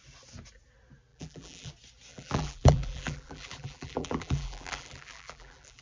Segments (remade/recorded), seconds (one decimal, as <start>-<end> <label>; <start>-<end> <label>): 0.0-1.1 recorded; 1.1-1.7 remade; 1.7-2.1 recorded; 2.1-5.8 remade